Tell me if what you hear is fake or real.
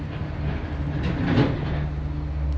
real